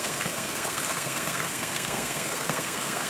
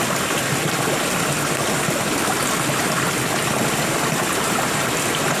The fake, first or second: first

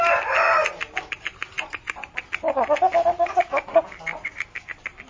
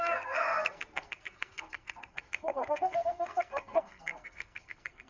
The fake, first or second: second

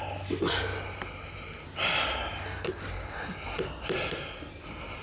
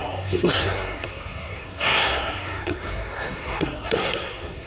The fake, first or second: second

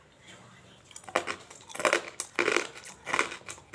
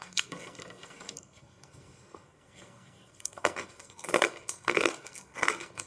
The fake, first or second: second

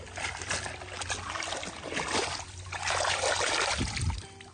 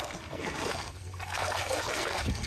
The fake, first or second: second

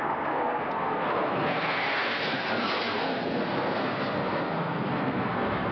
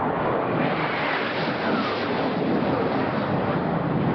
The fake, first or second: first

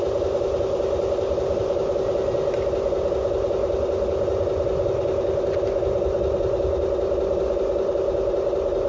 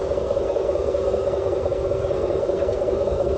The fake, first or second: second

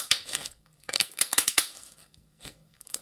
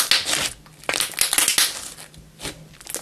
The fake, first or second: first